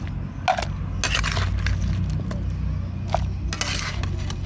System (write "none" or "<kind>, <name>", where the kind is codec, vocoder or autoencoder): none